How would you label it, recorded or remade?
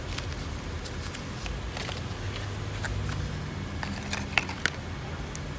recorded